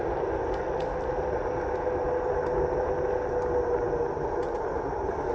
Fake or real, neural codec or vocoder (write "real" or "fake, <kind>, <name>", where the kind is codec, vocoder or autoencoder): real